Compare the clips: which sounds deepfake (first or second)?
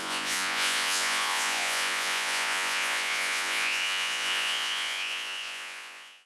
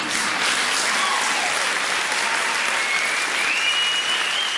first